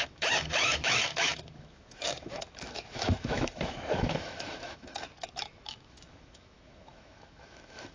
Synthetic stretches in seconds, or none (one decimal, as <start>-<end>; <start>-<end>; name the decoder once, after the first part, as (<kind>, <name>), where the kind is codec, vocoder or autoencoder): 0.0-7.9 (autoencoder, DAC-VAE)